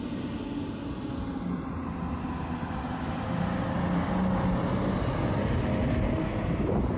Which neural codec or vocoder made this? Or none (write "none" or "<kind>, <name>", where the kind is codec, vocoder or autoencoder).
none